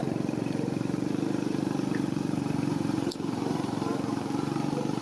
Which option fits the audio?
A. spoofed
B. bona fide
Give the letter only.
A